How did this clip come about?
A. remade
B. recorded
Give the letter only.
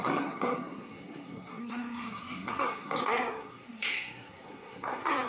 A